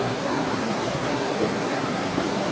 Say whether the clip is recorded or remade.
remade